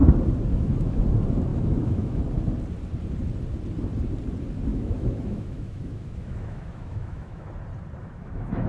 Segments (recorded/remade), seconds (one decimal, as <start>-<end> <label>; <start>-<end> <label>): 0.0-0.5 recorded; 0.5-1.0 remade; 1.0-1.5 recorded; 1.5-2.2 remade; 2.2-4.7 recorded; 4.7-7.5 remade; 7.5-8.0 recorded; 8.0-8.7 remade